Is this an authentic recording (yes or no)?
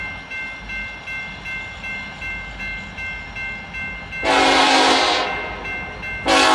yes